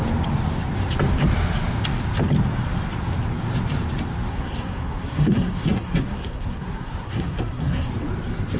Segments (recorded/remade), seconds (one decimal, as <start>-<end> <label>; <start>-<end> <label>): 0.0-4.3 recorded; 4.3-7.9 remade; 7.9-8.6 recorded